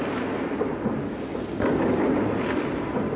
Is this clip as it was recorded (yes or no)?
yes